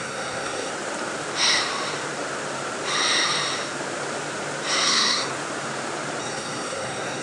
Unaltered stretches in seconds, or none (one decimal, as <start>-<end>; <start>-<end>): 0.7-4.7; 5.3-6.2